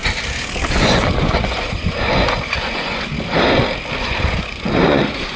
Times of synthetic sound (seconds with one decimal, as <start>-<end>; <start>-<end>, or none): 0.7-3.1; 4.0-5.4